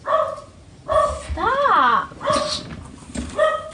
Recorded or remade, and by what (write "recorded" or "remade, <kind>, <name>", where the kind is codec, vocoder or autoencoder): recorded